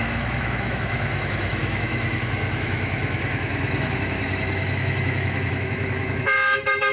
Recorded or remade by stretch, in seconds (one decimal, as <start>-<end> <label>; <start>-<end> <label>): 0.0-6.9 remade